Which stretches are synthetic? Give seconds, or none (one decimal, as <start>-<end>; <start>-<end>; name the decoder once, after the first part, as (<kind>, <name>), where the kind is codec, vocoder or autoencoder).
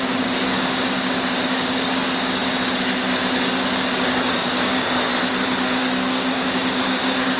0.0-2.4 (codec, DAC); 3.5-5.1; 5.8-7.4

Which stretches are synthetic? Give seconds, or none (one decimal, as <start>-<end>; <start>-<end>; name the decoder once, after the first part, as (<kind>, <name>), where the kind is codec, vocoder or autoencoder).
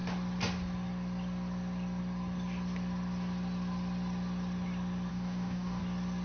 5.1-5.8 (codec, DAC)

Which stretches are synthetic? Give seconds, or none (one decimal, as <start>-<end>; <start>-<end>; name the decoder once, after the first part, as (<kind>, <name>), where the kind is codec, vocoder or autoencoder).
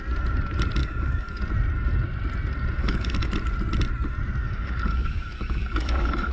0.8-1.4 (codec, DAC); 2.8-3.3; 4.4-6.3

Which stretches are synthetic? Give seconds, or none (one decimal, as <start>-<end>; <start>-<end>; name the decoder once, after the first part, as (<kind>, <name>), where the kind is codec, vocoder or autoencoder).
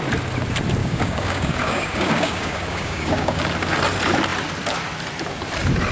0.8-3.4 (codec, DAC)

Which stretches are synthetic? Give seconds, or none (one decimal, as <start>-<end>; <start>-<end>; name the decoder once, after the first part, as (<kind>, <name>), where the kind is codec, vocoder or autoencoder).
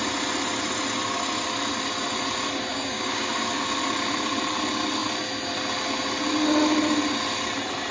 2.7-3.3 (codec, DAC)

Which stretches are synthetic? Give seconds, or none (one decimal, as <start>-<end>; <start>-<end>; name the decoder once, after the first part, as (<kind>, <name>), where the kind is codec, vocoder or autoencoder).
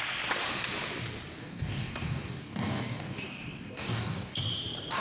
1.4-4.4 (codec, DAC)